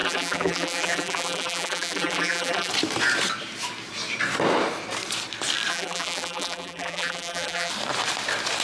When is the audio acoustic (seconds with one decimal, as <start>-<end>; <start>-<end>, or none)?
2.7-5.7; 7.7-8.6